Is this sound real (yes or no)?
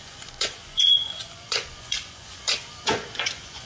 no